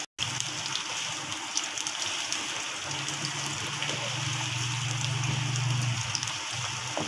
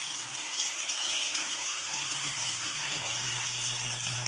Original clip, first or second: first